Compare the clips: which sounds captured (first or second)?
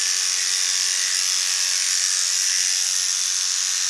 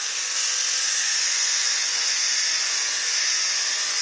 first